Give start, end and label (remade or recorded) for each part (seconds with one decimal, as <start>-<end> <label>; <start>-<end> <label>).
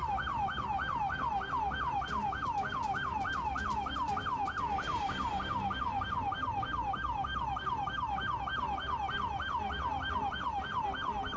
0.0-11.4 recorded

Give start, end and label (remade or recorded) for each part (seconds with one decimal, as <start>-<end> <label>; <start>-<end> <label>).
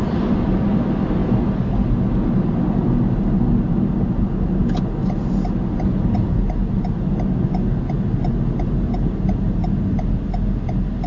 0.0-11.1 recorded